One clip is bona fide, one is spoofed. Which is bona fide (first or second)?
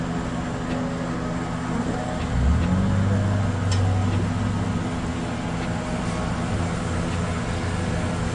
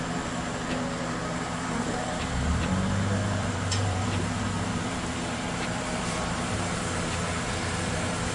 first